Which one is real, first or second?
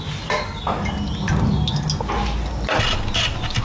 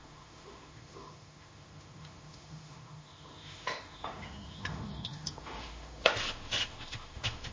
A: first